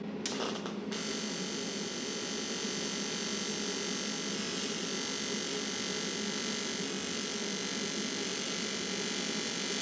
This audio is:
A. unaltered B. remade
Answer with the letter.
A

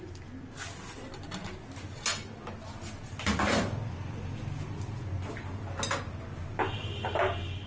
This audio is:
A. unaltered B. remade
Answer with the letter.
A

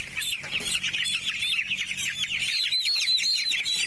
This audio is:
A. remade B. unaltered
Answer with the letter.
B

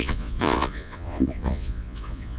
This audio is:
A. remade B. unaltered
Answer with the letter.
A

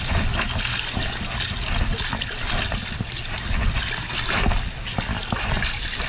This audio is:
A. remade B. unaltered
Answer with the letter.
B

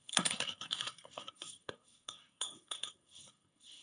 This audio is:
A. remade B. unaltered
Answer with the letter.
A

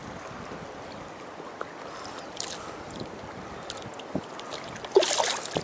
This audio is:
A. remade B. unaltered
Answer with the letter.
B